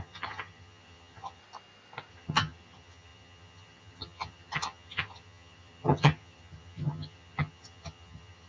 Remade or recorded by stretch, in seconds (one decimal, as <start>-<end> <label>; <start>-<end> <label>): 0.0-1.4 remade; 1.4-2.1 recorded; 2.1-8.5 remade